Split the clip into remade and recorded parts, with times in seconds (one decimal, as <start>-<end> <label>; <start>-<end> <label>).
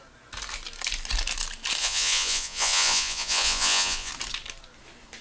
0.0-1.8 recorded; 1.8-4.1 remade; 4.1-5.2 recorded